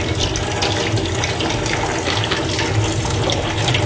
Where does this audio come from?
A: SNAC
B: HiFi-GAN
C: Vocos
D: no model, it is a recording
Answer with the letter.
D